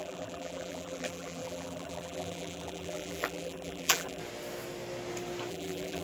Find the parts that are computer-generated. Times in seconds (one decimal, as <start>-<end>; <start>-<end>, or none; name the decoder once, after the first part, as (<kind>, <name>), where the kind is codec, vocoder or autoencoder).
0.0-4.2 (vocoder, BigVGAN v2); 5.5-6.0